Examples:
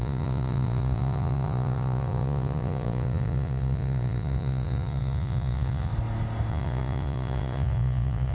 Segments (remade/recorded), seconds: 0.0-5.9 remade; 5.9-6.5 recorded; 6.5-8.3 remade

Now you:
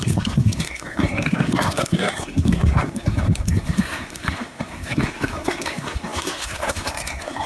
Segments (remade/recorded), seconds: 0.0-7.5 remade

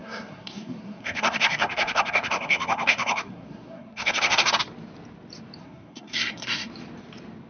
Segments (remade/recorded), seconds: 0.0-4.5 remade; 4.5-5.6 recorded; 5.6-6.7 remade; 6.7-7.5 recorded

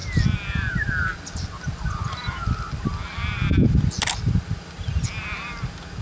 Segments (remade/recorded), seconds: 0.0-6.0 recorded